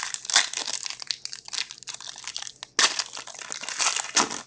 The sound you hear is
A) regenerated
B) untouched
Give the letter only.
B